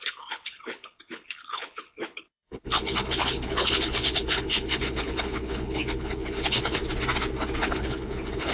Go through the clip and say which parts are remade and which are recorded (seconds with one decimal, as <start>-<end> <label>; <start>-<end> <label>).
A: 0.0-6.8 remade; 6.8-7.6 recorded; 7.6-8.5 remade